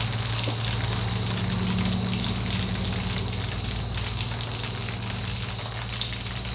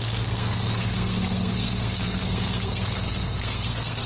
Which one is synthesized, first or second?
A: second